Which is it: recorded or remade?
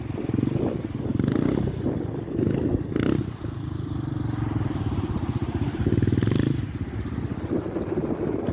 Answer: recorded